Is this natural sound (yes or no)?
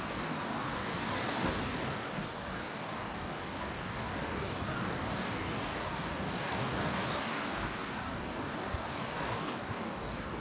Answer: no